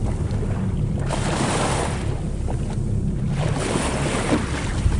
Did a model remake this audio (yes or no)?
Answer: yes